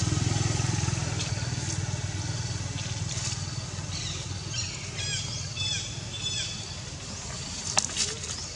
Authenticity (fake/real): real